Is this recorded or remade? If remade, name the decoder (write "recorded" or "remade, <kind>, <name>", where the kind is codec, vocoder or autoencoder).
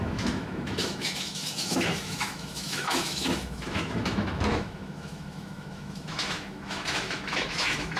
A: remade, autoencoder, DAC-VAE